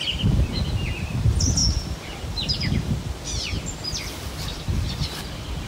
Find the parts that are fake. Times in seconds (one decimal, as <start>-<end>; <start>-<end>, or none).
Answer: 1.6-3.2